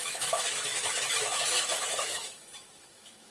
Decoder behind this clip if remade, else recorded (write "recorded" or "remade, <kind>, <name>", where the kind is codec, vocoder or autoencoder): remade, autoencoder, DAC-VAE